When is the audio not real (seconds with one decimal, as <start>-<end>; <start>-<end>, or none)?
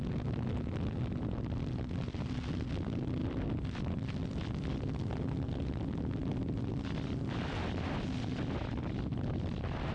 none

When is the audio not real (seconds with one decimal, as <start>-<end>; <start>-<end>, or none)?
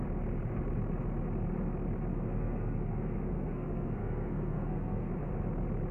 2.1-5.1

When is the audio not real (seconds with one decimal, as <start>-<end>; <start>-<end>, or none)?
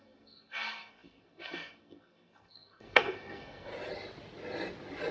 0.0-3.7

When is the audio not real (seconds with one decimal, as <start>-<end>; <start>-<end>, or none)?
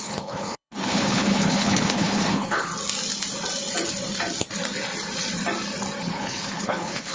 0.0-2.7; 6.0-7.1